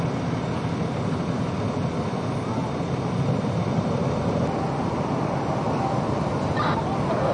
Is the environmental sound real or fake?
real